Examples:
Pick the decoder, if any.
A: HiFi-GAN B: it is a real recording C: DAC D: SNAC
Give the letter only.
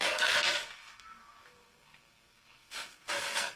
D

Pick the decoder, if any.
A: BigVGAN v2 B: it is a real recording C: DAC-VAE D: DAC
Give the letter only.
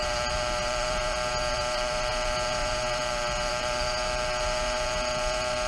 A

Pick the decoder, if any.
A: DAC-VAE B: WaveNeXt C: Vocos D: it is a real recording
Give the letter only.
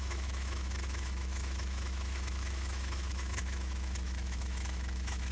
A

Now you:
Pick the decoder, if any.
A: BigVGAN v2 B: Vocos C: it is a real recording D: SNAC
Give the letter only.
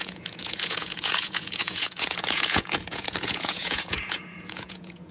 B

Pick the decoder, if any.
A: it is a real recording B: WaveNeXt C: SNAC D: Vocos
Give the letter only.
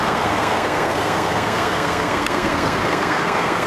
C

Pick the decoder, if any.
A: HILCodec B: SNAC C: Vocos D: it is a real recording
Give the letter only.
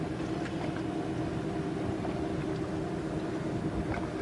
D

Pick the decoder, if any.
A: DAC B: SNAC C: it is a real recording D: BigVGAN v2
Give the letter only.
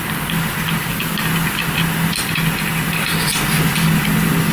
C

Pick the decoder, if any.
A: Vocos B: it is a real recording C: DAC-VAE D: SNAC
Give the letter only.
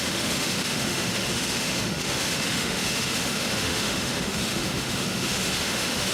C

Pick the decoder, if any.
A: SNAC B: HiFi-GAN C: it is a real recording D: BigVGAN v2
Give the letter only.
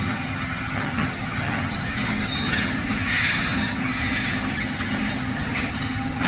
B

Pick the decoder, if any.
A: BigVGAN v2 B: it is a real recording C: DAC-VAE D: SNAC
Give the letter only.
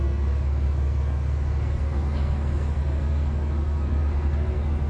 D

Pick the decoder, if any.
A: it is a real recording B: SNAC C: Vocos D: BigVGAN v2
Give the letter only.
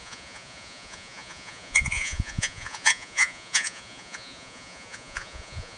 C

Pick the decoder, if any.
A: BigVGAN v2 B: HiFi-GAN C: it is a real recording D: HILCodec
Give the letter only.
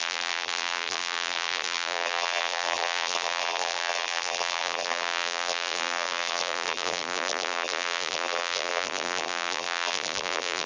A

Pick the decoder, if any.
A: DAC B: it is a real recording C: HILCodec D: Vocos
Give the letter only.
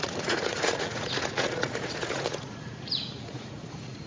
D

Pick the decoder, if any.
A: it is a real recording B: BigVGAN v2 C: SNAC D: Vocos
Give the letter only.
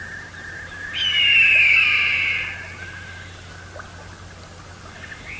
A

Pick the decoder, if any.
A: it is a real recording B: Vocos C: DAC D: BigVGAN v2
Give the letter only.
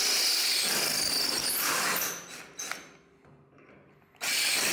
A